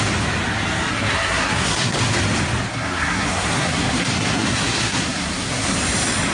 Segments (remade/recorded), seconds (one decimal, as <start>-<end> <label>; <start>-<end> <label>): 0.0-0.9 recorded; 0.9-2.0 remade; 2.0-2.7 recorded; 2.7-5.8 remade; 5.8-6.3 recorded